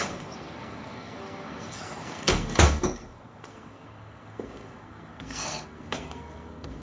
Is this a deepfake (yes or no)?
yes